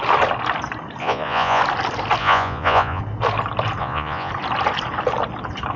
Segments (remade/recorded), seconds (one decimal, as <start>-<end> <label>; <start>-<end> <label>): 0.0-1.0 recorded; 1.0-1.6 remade; 1.6-2.2 recorded; 2.2-3.0 remade; 3.0-3.8 recorded; 3.8-4.3 remade; 4.3-5.8 recorded

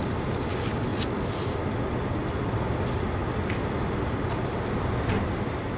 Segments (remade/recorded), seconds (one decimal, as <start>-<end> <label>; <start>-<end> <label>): 0.0-5.8 recorded

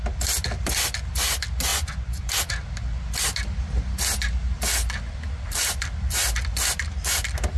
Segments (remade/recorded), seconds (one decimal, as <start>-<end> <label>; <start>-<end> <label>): 0.0-1.7 recorded; 1.7-2.3 remade; 2.3-7.6 recorded

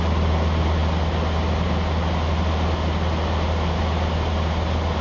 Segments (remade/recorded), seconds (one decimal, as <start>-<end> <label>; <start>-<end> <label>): 0.0-5.0 recorded